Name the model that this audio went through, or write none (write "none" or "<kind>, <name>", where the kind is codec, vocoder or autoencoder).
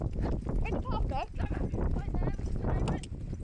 none